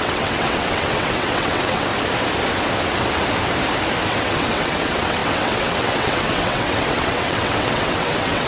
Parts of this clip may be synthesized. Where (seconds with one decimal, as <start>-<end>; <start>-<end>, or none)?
0.0-1.9; 4.1-8.5